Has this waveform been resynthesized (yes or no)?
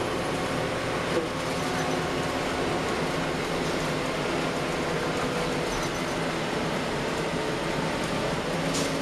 no